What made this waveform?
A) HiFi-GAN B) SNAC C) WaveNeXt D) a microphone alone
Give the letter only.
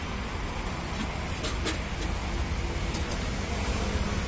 D